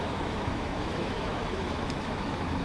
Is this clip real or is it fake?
fake